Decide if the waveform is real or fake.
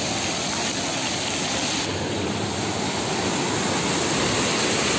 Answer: real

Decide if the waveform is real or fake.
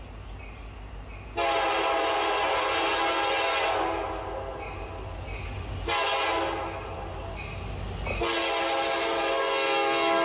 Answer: real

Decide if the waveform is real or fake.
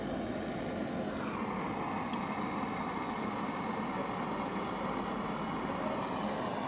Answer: real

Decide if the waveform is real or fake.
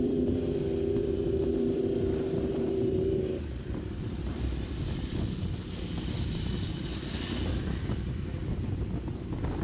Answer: fake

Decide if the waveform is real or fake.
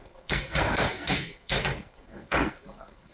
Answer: fake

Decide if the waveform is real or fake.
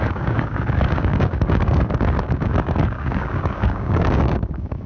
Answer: fake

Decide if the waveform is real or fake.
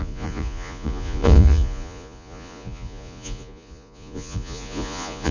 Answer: fake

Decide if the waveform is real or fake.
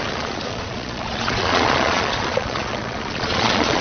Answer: fake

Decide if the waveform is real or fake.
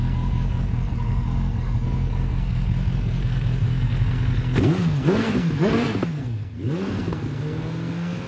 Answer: fake